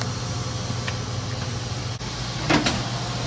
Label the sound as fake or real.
real